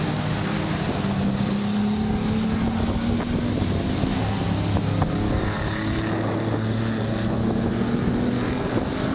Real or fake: real